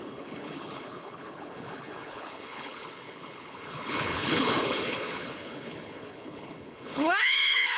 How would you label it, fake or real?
fake